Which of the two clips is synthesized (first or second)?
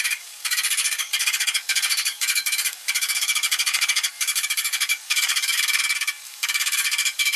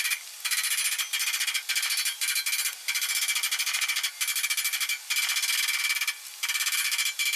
first